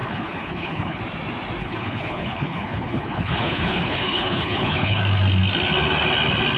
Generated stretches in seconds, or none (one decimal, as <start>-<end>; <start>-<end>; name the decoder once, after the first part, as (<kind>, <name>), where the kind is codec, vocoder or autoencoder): 0.0-1.0 (codec, HILCodec); 1.6-5.0